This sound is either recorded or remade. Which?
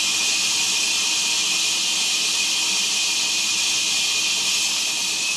recorded